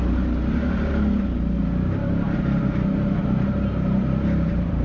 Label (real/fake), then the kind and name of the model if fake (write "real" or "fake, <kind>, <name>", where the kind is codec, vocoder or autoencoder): real